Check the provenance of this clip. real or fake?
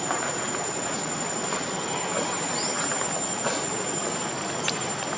real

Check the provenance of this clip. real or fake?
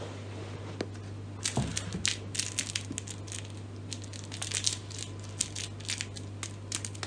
real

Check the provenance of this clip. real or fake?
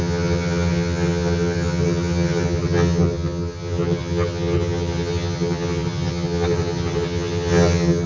fake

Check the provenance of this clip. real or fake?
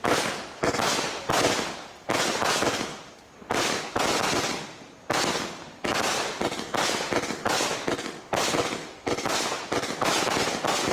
real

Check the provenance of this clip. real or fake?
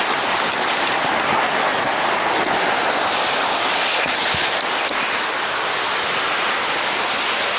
real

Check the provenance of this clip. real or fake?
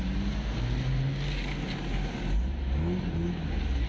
real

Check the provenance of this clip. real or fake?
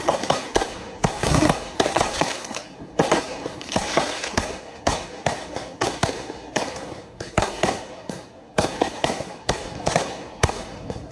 fake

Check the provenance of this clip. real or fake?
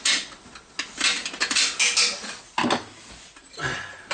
real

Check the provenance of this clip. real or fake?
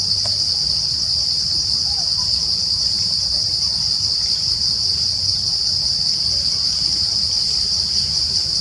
fake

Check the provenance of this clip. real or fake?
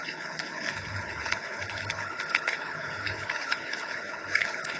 fake